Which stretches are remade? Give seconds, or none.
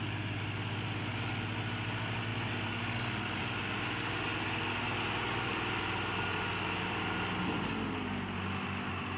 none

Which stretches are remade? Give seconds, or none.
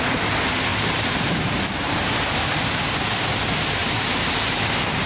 0.7-2.5 (vocoder, BigVGAN v2); 3.8-4.5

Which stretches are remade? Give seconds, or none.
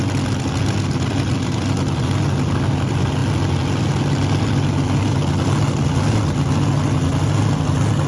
none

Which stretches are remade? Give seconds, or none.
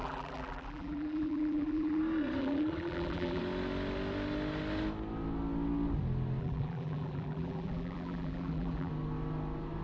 0.0-2.0 (vocoder, BigVGAN v2); 2.4-3.4; 6.4-8.9